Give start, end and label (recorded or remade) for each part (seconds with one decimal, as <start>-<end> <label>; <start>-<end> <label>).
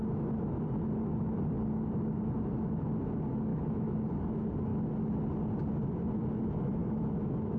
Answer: 0.0-3.5 recorded; 3.5-4.0 remade; 4.0-6.8 recorded; 6.8-7.6 remade